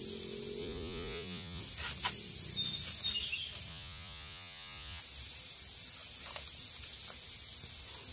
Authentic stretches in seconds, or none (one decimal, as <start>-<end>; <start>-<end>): 0.0-0.6; 1.6-3.7; 5.0-8.1

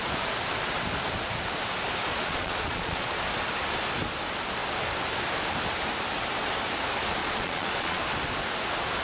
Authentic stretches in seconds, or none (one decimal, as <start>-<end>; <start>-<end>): 0.0-2.1; 3.2-7.2; 8.0-9.0

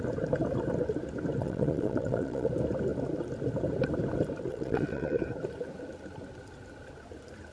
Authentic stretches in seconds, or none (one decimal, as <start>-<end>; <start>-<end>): 0.0-1.4; 2.5-4.5; 5.2-7.5

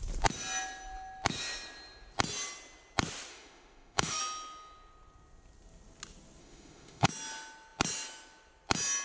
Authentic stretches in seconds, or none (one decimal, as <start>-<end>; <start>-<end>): 0.0-3.3; 4.2-6.4; 7.1-9.0

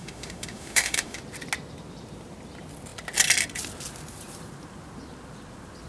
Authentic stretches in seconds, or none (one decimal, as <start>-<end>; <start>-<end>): 1.2-5.9

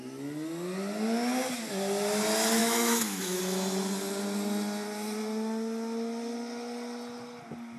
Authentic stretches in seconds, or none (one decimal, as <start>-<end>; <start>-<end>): 0.0-2.6; 3.4-7.8